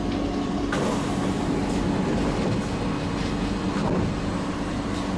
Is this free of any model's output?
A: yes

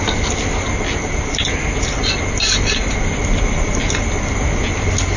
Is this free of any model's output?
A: yes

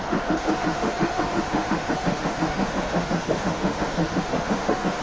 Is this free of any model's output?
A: no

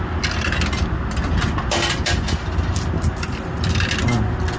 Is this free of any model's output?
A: yes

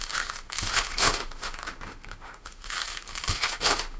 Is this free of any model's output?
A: no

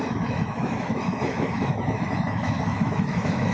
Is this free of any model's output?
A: no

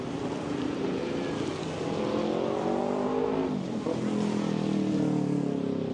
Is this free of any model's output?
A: yes